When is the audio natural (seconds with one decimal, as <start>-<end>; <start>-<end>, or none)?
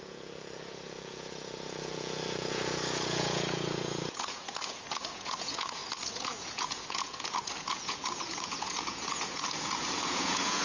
none